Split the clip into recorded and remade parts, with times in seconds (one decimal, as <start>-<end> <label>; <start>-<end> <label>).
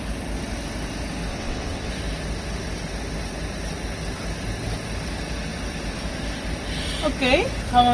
0.0-1.3 recorded; 1.3-1.9 remade; 1.9-7.9 recorded